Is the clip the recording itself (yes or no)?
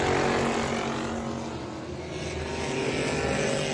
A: yes